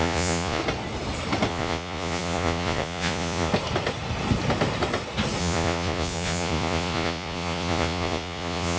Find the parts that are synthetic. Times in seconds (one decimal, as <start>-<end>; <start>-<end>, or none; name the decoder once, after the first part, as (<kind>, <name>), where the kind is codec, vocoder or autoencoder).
0.0-0.6 (vocoder, Vocos); 1.5-3.5; 5.4-8.8